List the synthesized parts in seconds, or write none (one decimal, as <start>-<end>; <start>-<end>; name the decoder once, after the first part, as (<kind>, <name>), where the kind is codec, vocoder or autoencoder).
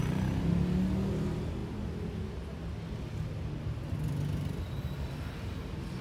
none